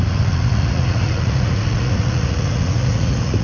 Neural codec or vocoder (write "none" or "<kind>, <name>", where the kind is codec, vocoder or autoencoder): vocoder, Vocos